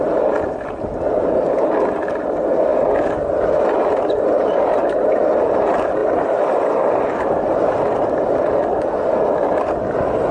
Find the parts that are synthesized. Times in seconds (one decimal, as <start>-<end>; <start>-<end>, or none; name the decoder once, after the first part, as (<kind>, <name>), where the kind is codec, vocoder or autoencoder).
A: none